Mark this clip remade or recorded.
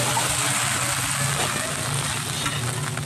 recorded